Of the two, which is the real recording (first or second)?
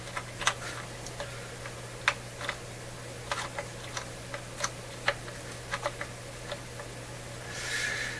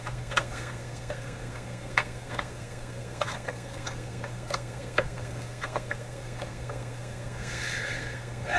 first